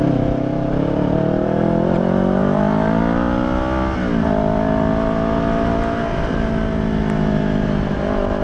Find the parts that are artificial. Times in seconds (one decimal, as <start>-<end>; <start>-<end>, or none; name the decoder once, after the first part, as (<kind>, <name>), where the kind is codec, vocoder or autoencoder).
none